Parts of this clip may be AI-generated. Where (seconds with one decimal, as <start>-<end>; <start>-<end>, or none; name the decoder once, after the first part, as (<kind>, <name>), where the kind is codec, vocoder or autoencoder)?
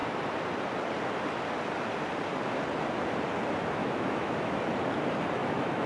3.8-4.6 (autoencoder, DAC-VAE); 5.4-5.9